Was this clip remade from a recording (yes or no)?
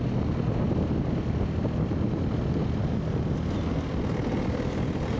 no